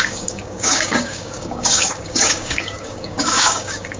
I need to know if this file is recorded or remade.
remade